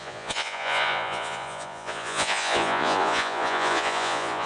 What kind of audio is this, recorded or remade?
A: remade